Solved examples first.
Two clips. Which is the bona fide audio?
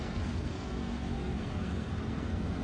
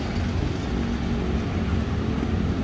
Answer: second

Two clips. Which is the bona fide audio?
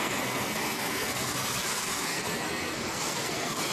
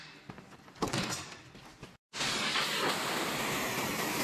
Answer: second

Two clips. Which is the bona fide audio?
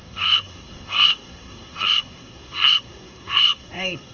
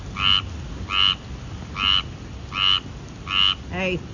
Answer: second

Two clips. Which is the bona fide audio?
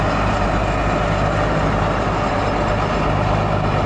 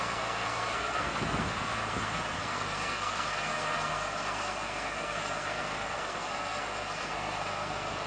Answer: first